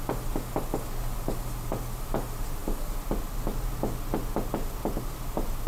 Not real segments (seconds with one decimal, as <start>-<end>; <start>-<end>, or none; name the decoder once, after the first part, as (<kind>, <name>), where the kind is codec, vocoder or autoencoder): none